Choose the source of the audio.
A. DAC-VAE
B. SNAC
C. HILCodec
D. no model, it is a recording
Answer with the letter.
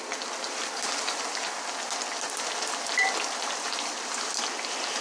D